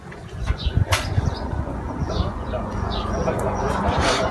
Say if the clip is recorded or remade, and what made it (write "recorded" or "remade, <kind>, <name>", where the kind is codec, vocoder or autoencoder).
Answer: remade, vocoder, Vocos